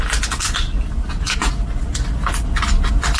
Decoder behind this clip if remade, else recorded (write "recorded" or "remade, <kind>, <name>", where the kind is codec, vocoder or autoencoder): recorded